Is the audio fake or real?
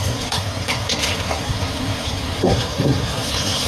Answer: fake